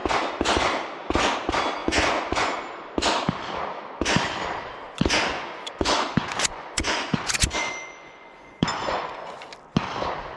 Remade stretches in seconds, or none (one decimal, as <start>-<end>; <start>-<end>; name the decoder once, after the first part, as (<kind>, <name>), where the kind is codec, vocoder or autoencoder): 1.8-2.5 (vocoder, Vocos); 5.3-9.5

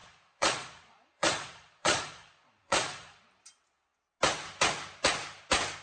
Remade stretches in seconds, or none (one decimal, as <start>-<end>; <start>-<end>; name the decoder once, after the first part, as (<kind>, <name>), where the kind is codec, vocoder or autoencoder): 0.0-3.3 (vocoder, Vocos)

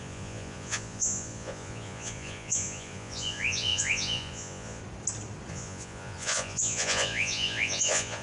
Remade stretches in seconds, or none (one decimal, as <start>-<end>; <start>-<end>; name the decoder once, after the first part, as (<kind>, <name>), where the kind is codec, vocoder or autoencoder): 0.0-4.8 (vocoder, Vocos); 5.5-8.2

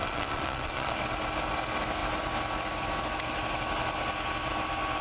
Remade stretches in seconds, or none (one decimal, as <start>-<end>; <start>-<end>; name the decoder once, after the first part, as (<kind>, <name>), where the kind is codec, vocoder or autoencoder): 0.0-0.9 (vocoder, Vocos)

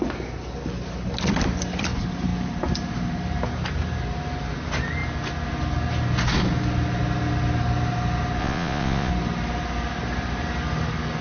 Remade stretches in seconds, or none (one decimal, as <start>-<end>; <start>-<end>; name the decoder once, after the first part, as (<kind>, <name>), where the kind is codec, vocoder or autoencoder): 8.4-9.1 (vocoder, Vocos)

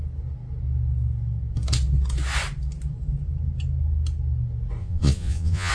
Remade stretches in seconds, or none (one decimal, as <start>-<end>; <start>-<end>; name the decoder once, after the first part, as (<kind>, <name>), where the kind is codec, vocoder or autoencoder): 4.8-5.7 (vocoder, Vocos)

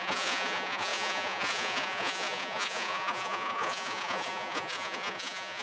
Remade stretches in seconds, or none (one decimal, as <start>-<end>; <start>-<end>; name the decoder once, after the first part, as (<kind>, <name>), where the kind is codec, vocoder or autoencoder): 0.0-5.6 (vocoder, Vocos)

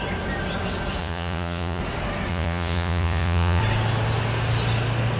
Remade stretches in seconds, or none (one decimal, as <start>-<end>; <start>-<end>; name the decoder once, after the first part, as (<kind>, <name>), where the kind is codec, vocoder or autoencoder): 1.0-1.8 (vocoder, Vocos); 2.3-3.6